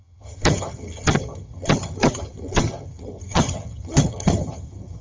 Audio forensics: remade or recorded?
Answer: remade